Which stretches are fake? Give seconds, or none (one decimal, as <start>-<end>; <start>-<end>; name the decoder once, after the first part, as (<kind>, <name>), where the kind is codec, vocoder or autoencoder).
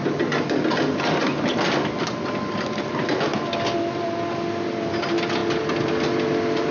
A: none